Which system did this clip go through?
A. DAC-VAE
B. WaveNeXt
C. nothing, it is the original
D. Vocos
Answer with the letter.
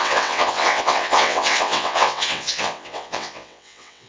B